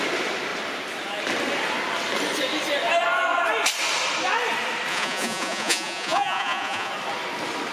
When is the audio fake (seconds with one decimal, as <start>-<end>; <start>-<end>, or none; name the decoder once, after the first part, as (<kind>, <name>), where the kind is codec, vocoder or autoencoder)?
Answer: 4.9-6.9 (vocoder, Vocos)